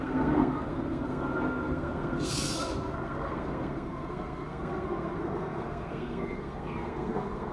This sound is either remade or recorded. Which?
remade